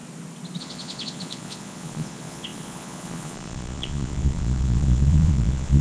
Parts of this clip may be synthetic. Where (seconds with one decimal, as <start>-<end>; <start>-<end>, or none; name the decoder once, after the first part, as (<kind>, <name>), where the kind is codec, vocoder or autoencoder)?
0.6-5.8 (vocoder, Vocos)